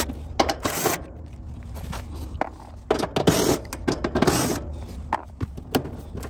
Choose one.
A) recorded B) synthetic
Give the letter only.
A